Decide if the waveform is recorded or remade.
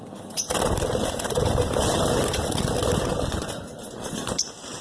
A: recorded